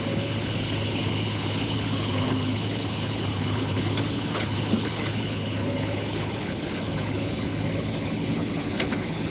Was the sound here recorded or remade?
remade